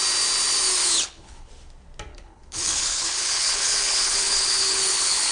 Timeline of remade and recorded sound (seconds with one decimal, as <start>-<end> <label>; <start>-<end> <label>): 0.0-0.8 recorded; 0.8-1.5 remade; 1.5-2.1 recorded; 2.1-5.3 remade